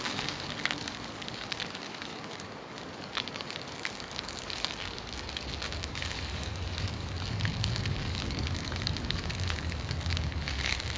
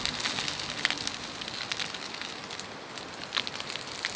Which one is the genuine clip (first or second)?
second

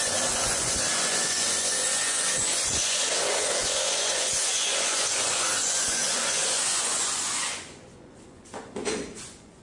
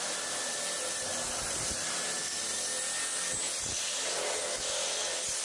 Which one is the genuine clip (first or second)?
second